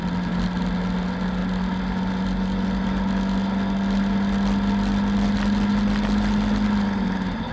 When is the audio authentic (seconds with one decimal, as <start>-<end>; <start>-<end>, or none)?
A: 0.0-7.5